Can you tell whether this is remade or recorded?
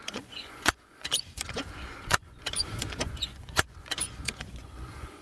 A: remade